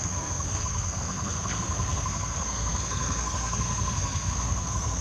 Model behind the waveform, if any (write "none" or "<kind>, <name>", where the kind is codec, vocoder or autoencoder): codec, SNAC